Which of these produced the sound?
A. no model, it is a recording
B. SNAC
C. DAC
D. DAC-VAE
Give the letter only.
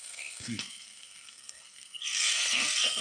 B